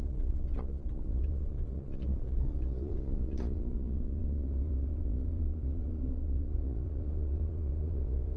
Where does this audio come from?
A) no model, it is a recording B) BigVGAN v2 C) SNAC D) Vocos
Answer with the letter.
D